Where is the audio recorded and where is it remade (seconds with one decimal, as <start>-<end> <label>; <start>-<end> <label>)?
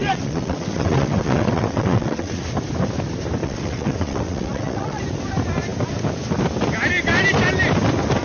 0.0-2.4 remade; 2.4-3.4 recorded; 3.4-5.0 remade; 5.0-8.2 recorded